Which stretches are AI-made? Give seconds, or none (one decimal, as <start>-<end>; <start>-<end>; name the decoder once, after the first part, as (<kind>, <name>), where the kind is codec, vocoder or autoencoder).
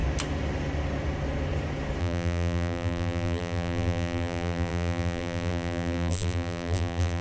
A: 2.0-7.2 (vocoder, BigVGAN v2)